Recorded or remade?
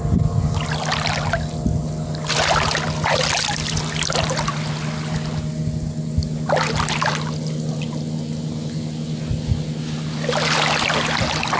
recorded